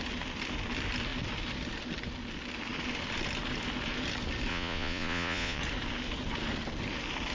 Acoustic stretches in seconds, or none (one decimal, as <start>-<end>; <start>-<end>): 0.0-4.5; 5.6-7.3